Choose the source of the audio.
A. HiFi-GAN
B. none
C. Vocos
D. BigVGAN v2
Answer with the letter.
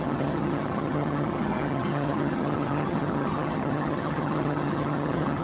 A